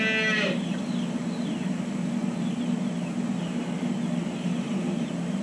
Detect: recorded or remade recorded